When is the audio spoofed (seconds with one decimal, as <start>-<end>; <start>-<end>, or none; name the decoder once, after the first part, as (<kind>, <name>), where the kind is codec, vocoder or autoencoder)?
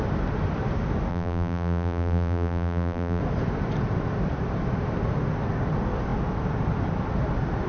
1.1-3.2 (vocoder, BigVGAN v2)